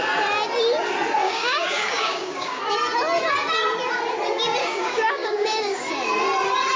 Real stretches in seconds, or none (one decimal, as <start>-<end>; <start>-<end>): 0.0-1.2; 2.6-4.6; 5.8-6.8